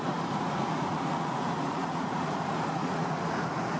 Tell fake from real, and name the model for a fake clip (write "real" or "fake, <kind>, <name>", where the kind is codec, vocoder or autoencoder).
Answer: fake, vocoder, Vocos